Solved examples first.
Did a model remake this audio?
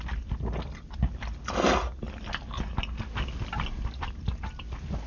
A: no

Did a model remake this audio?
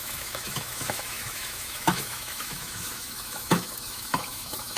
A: yes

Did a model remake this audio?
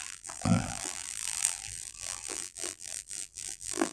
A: yes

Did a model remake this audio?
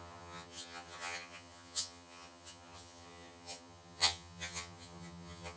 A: yes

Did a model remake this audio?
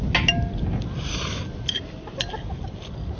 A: no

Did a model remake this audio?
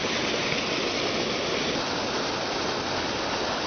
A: no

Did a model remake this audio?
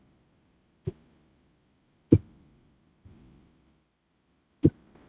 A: no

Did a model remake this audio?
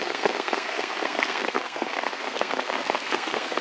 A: yes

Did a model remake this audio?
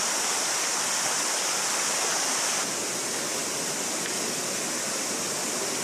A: no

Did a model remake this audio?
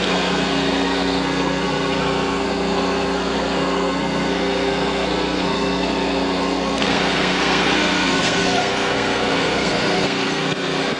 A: yes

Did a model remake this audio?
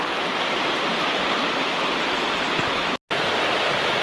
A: no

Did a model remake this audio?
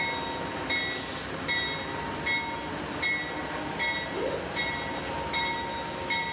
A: no